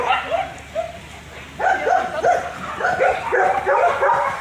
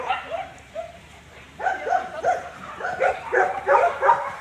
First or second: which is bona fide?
first